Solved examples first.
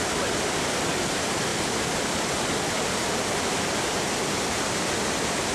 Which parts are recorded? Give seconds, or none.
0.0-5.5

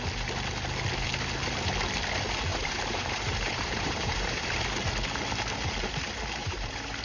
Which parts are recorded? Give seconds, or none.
0.0-2.5; 4.6-6.4

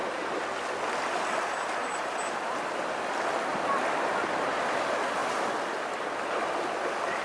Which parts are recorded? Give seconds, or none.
0.0-7.2

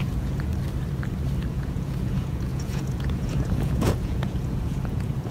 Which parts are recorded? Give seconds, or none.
0.5-1.5

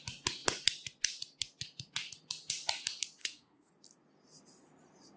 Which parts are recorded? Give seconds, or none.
0.0-3.2; 3.7-5.2